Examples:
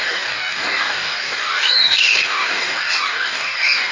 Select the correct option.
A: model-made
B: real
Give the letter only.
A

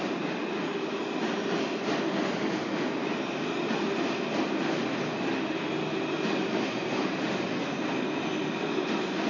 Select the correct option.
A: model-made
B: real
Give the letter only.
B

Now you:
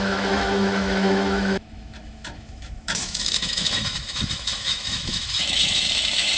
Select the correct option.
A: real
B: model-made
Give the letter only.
B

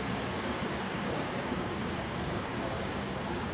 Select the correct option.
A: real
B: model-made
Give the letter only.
B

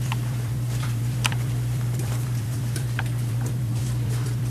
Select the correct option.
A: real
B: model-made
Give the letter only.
B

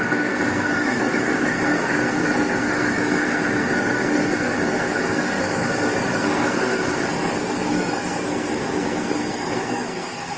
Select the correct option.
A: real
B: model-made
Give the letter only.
B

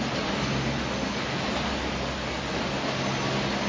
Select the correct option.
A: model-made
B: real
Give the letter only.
B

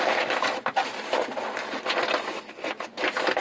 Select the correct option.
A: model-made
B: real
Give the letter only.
B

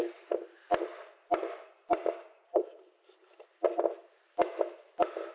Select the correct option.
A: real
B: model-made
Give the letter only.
A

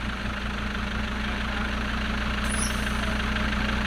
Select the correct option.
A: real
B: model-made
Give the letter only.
A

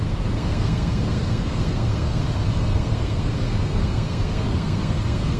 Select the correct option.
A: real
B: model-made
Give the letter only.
B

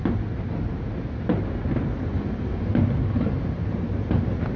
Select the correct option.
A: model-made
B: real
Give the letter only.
B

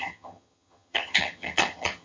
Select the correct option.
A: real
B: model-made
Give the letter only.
B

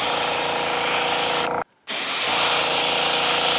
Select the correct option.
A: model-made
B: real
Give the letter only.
B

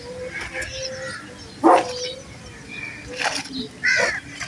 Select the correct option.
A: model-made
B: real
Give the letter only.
B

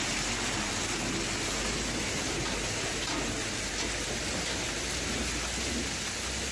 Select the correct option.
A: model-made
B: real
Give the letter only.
B